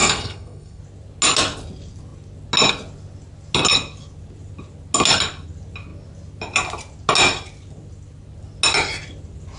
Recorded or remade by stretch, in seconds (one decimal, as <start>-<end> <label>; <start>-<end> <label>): 0.0-0.8 remade; 0.8-9.6 recorded